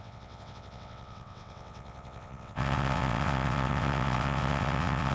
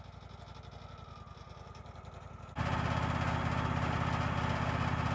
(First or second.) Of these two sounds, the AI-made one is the first